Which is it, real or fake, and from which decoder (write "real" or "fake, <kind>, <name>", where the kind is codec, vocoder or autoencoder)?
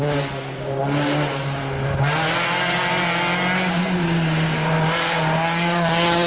real